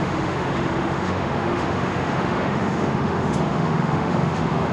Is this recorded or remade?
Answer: remade